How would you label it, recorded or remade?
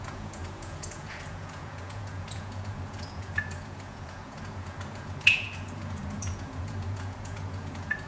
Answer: remade